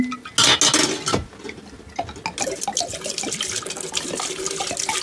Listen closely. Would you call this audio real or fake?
real